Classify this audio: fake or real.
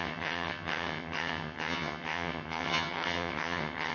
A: fake